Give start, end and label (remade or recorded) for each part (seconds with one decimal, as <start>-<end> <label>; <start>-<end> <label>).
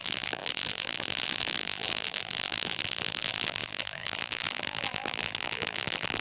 0.0-6.2 remade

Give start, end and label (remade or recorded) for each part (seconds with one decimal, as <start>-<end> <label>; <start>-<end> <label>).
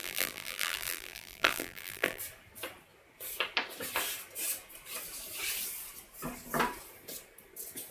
0.0-2.2 remade; 2.2-7.9 recorded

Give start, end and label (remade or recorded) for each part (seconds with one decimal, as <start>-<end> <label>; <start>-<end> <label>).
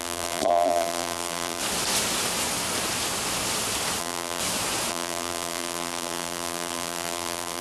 0.0-1.6 remade; 1.6-4.0 recorded; 4.0-4.4 remade; 4.4-4.9 recorded; 4.9-7.6 remade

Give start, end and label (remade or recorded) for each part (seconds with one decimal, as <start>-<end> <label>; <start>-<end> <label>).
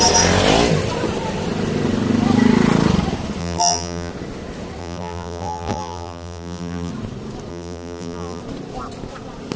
0.0-3.4 recorded; 3.4-4.1 remade; 4.1-4.8 recorded; 4.8-6.9 remade; 6.9-7.5 recorded; 7.5-8.4 remade; 8.4-9.6 recorded